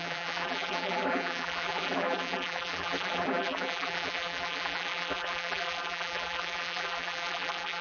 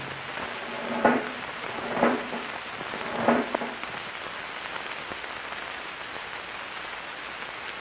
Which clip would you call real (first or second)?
second